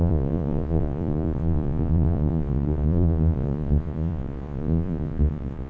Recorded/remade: remade